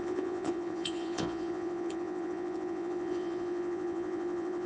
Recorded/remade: remade